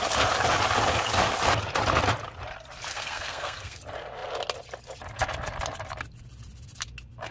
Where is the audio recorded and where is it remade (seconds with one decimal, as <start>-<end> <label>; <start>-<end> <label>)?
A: 0.0-2.9 recorded; 2.9-3.8 remade; 3.8-7.3 recorded